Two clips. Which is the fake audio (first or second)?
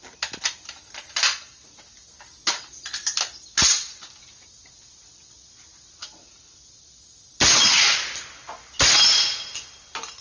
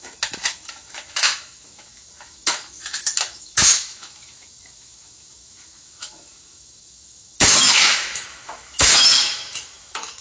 second